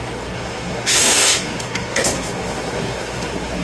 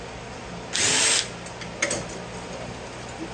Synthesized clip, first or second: first